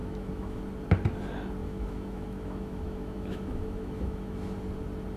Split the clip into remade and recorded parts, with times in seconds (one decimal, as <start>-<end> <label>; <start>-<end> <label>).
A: 0.0-0.6 remade; 0.6-1.6 recorded; 1.6-4.6 remade; 4.6-5.2 recorded